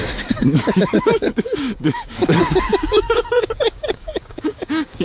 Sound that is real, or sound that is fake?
fake